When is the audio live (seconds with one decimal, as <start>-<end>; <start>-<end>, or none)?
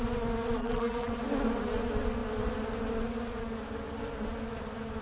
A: 0.0-0.6; 1.1-5.0